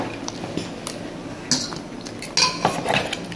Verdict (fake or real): real